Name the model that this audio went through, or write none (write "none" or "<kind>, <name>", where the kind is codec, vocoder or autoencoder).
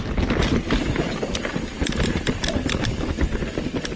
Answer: none